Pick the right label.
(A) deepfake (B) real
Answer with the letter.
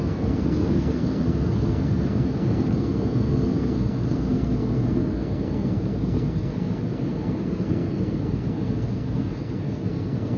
A